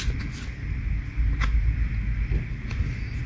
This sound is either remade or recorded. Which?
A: recorded